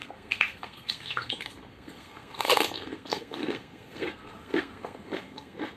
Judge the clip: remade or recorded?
remade